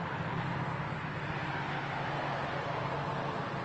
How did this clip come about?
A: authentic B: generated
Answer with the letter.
A